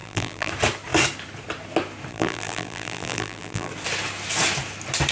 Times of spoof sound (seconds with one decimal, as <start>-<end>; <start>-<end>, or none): 0.0-0.5; 2.1-3.7